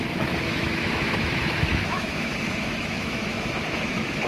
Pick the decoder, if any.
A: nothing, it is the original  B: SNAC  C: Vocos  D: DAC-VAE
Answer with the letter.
D